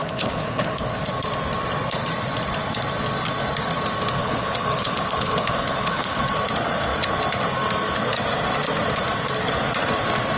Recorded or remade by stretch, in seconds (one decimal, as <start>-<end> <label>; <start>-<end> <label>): 0.0-1.0 remade; 1.0-4.2 recorded; 4.2-6.2 remade; 6.2-10.4 recorded